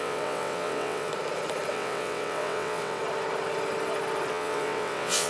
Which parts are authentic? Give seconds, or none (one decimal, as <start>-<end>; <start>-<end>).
1.1-1.7; 3.0-4.3